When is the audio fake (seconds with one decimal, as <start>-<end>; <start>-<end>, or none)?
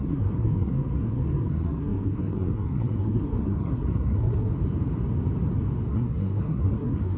0.0-4.5; 5.9-7.2